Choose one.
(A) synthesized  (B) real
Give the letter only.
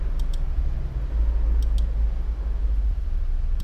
B